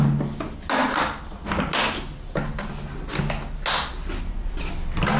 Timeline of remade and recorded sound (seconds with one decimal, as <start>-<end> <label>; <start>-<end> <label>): 0.0-5.2 recorded